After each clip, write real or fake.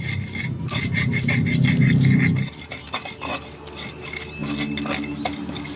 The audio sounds real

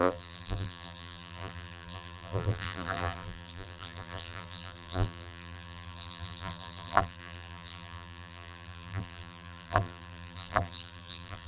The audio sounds fake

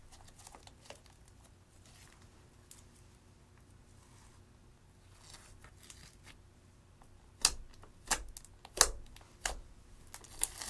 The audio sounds real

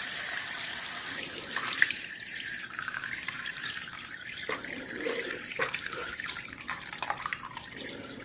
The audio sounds fake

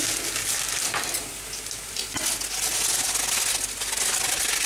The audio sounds real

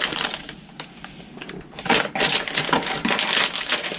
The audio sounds real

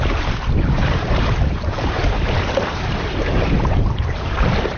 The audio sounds fake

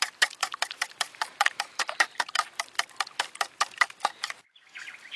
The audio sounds fake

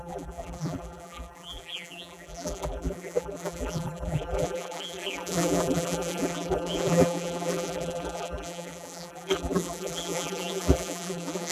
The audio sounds fake